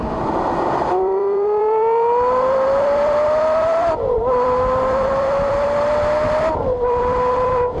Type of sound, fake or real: fake